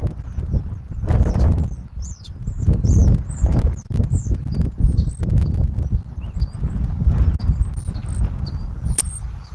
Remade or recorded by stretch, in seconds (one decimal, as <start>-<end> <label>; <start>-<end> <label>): 0.0-9.5 recorded